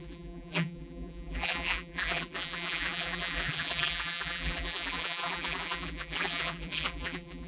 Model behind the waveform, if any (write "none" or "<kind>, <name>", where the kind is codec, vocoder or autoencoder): vocoder, BigVGAN v2